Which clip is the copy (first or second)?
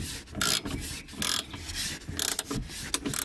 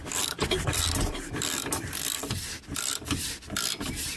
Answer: second